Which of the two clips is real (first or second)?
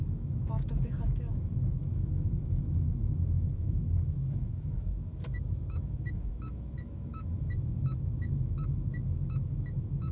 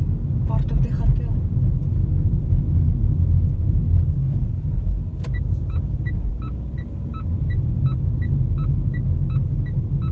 second